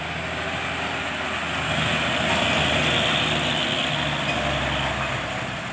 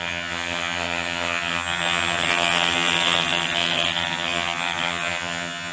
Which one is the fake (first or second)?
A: second